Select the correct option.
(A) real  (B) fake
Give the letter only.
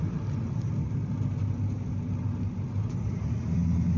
A